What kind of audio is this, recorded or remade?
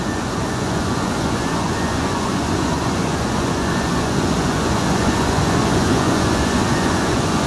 remade